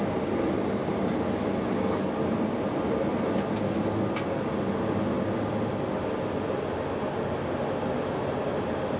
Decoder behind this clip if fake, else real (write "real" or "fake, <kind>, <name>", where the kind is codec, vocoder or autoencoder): real